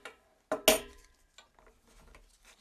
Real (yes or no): yes